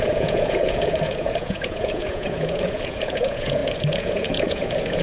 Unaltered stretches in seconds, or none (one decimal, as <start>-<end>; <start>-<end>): none